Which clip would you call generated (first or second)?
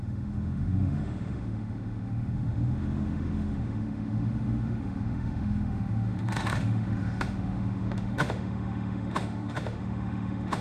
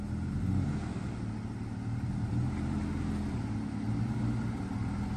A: first